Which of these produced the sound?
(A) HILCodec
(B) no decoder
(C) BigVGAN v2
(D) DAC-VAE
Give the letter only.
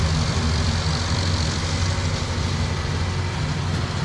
B